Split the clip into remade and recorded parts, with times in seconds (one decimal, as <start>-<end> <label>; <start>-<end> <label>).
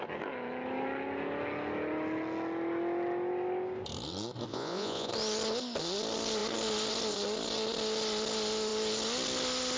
0.0-4.5 recorded; 4.5-5.1 remade; 5.1-9.8 recorded